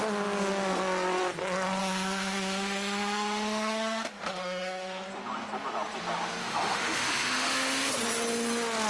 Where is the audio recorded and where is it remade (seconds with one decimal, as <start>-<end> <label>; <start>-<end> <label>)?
0.0-1.8 recorded; 1.8-5.1 remade; 5.1-6.4 recorded; 6.4-7.9 remade; 7.9-8.9 recorded